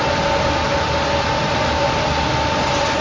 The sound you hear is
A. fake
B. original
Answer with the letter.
B